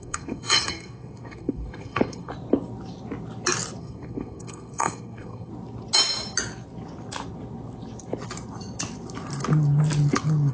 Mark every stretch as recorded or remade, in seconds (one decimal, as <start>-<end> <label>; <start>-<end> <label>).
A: 0.0-2.3 remade; 2.3-3.8 recorded; 3.8-5.5 remade; 5.5-10.5 recorded